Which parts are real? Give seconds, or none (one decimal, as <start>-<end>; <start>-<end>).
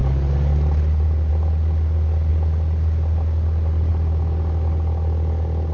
0.0-5.7